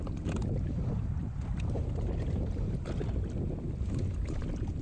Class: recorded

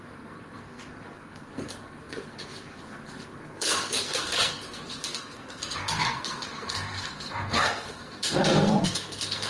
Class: remade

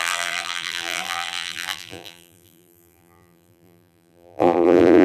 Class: remade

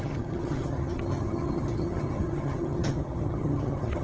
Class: remade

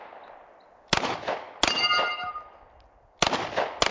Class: recorded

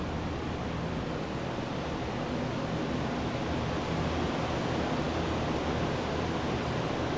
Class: recorded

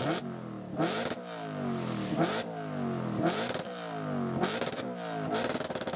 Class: recorded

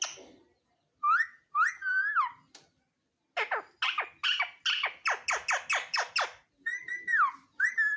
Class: recorded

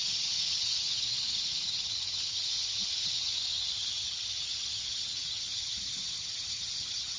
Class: remade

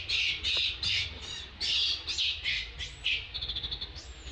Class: recorded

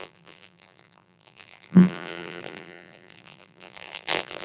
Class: remade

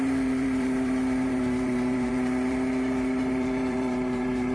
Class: remade